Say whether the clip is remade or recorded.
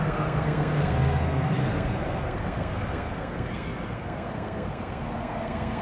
remade